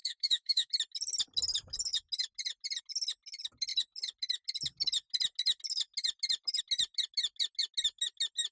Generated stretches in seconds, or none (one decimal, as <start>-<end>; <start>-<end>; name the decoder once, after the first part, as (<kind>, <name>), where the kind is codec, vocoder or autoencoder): 0.0-0.7 (autoencoder, DAC-VAE)